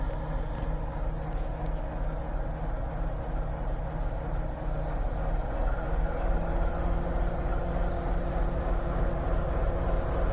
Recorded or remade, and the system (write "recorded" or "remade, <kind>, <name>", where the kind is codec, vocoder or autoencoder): recorded